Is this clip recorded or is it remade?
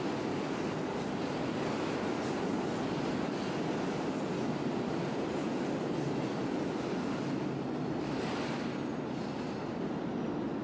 recorded